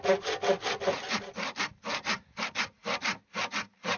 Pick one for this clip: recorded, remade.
recorded